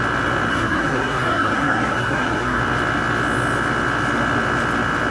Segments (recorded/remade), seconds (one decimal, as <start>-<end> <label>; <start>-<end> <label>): 0.0-0.5 recorded; 0.5-2.6 remade; 2.6-5.1 recorded